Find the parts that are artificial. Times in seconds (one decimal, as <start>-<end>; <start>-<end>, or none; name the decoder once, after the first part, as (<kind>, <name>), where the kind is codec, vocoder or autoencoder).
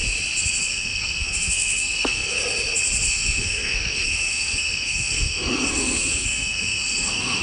0.6-2.4 (codec, SNAC); 3.1-7.4